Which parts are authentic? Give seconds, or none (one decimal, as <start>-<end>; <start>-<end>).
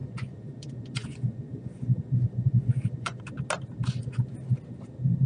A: 3.2-5.3